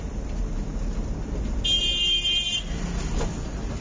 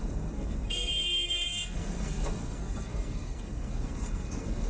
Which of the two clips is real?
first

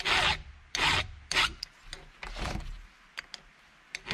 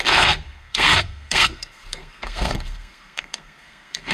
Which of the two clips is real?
first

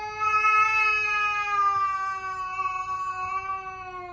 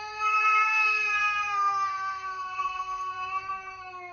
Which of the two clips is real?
first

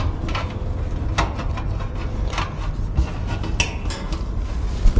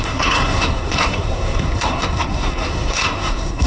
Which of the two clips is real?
first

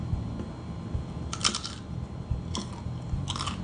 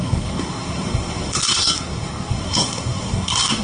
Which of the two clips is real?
first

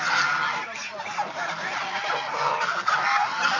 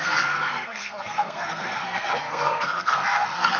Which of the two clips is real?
first